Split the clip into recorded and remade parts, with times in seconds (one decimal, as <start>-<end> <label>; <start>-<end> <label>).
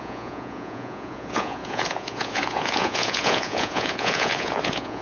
0.0-5.0 remade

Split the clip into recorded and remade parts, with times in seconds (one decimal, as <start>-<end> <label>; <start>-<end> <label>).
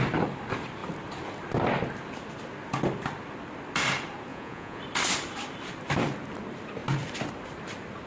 0.0-4.3 recorded; 4.3-4.8 remade; 4.8-8.1 recorded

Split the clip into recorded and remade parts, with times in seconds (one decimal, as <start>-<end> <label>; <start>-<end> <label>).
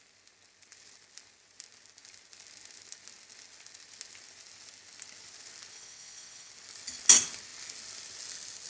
0.0-5.7 recorded; 5.7-6.5 remade; 6.5-8.7 recorded